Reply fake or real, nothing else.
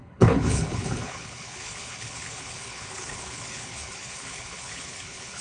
fake